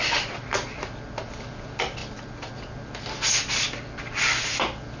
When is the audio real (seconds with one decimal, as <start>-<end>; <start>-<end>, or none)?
0.0-5.0